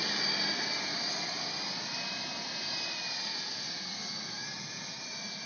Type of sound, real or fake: real